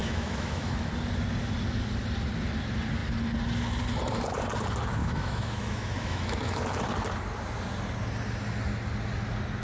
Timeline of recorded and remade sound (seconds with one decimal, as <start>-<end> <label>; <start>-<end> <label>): 0.0-0.9 remade; 0.9-5.0 recorded; 5.0-6.8 remade; 6.8-9.6 recorded